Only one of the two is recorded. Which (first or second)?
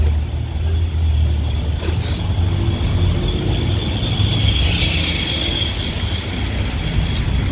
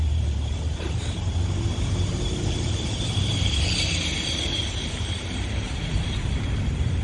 first